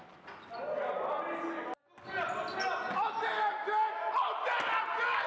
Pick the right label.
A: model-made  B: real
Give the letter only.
B